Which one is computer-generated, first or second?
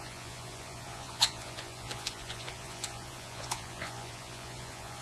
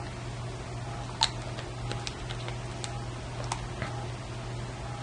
first